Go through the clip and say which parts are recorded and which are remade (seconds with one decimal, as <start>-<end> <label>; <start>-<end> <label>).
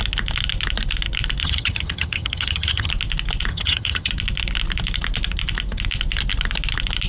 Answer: 0.0-1.4 recorded; 1.4-2.9 remade; 2.9-3.5 recorded; 3.5-4.1 remade; 4.1-7.1 recorded